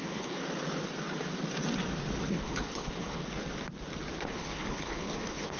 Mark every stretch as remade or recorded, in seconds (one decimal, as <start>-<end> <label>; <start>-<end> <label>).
0.0-0.4 remade; 0.4-2.3 recorded; 2.3-3.2 remade; 3.2-4.2 recorded; 4.2-5.6 remade